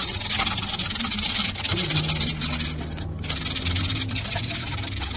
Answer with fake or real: real